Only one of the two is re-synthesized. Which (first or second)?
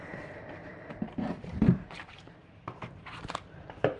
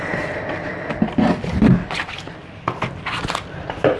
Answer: first